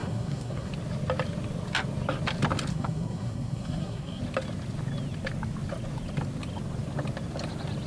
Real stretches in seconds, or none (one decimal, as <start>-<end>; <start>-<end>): 0.7-2.7; 4.2-7.9